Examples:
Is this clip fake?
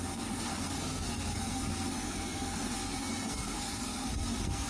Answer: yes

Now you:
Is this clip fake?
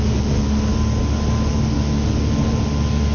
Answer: no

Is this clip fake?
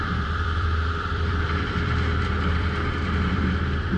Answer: yes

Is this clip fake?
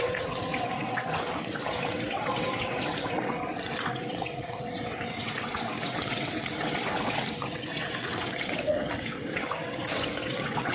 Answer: yes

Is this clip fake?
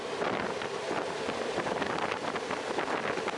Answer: no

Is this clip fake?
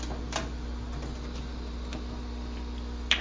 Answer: no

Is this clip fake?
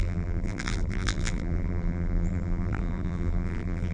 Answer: yes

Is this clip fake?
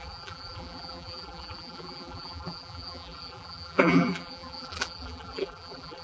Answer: yes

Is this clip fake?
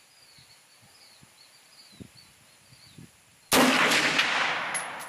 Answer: no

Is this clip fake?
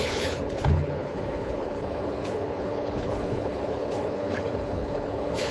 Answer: yes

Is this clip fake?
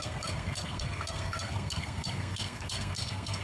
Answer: yes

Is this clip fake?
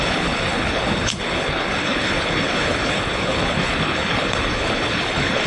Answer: yes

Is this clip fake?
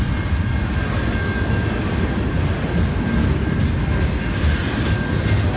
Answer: no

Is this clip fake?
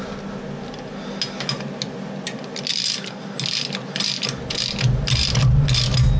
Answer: no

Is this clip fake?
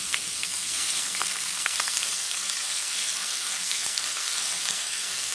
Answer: yes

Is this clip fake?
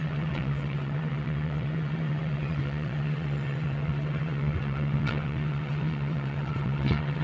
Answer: yes